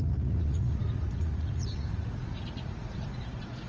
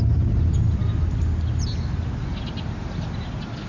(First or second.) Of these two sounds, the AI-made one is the first